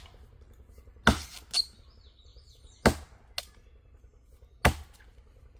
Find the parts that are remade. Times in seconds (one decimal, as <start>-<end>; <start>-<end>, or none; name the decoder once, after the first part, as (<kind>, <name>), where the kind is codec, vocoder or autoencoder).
none